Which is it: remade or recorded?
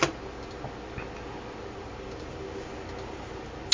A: recorded